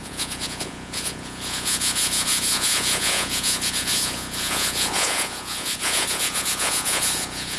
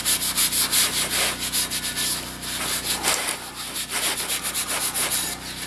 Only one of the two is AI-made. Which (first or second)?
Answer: first